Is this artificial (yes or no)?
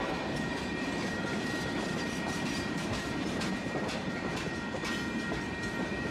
yes